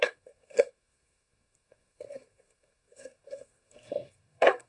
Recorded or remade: remade